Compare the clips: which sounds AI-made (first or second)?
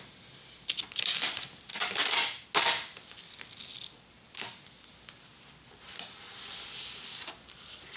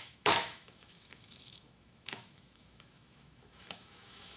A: second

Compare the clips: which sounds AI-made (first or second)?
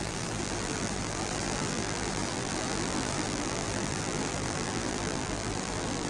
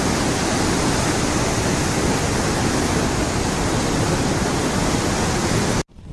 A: first